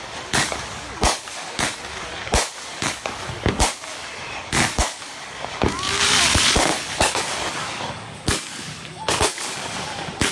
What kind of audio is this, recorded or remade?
remade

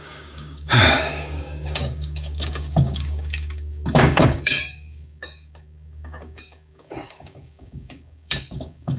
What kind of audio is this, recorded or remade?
remade